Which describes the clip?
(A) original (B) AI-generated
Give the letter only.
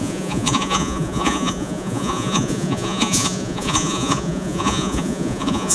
B